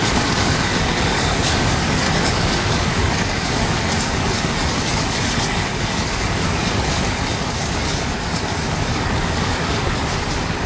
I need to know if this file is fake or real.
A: fake